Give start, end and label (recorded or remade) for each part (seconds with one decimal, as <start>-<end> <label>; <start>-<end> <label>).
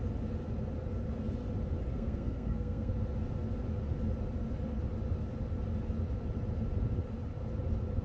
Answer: 0.0-1.9 recorded; 1.9-2.9 remade; 2.9-8.0 recorded